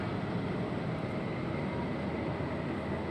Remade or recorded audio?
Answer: recorded